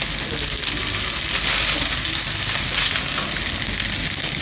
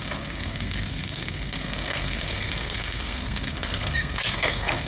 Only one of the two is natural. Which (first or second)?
first